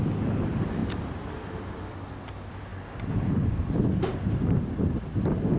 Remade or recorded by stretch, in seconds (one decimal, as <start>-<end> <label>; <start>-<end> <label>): 0.0-0.8 recorded; 0.8-1.8 remade; 1.8-5.6 recorded